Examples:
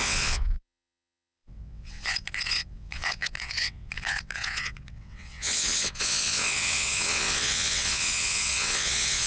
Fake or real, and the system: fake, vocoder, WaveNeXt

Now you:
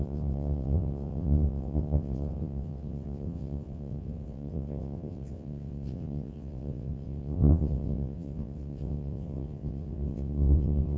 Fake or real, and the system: fake, vocoder, WaveNeXt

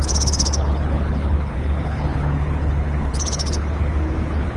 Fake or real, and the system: fake, codec, HILCodec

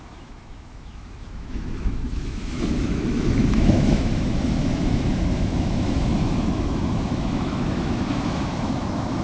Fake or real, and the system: fake, autoencoder, DAC-VAE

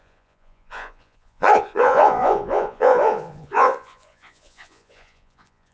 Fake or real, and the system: fake, vocoder, Vocos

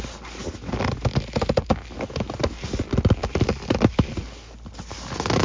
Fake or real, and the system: real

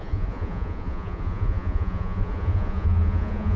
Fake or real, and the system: fake, vocoder, Vocos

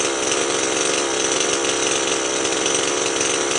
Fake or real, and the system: real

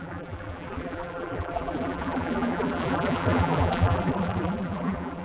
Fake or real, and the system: fake, vocoder, BigVGAN v2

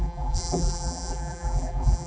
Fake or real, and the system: fake, vocoder, BigVGAN v2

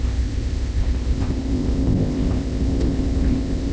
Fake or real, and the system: fake, codec, ZipCodec